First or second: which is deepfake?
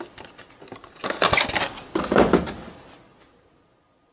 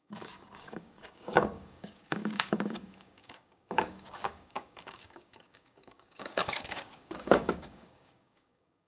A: second